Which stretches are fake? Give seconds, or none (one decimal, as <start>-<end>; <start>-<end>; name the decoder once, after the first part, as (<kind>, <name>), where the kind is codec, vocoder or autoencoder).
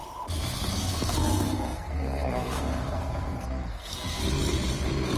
0.7-4.2 (codec, SNAC)